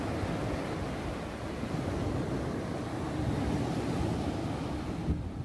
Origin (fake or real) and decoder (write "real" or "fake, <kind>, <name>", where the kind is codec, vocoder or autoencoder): real